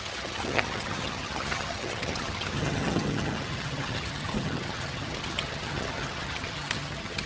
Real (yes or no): no